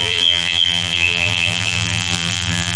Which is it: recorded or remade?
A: remade